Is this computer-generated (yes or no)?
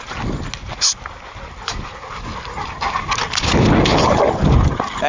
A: no